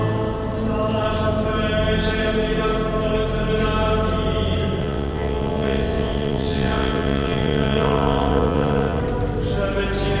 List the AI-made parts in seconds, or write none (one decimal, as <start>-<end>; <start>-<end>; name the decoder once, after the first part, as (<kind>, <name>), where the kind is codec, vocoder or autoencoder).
4.8-9.0 (vocoder, WaveNeXt)